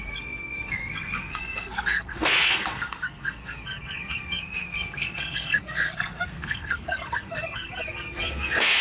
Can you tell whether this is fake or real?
fake